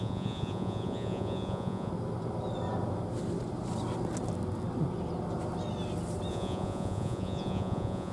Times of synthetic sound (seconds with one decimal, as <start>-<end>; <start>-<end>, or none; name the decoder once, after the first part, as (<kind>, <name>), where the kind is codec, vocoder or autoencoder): 0.0-1.9 (vocoder, Vocos); 6.3-8.1